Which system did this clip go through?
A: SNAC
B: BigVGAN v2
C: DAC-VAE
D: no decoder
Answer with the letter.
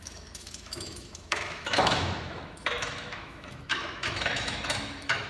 C